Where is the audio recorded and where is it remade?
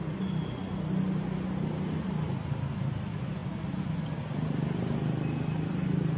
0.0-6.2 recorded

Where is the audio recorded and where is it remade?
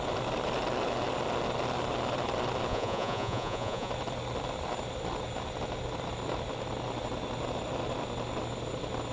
0.0-2.7 recorded; 2.7-3.9 remade; 3.9-9.1 recorded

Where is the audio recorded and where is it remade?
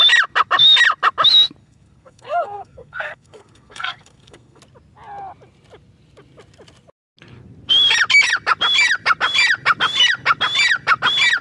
0.0-1.6 recorded; 1.6-4.6 remade; 4.6-11.4 recorded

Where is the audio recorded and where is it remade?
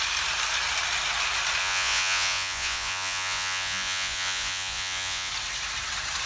0.0-1.6 recorded; 1.6-5.3 remade; 5.3-6.3 recorded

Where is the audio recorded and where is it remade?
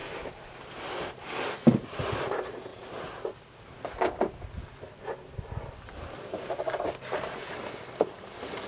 0.0-8.7 recorded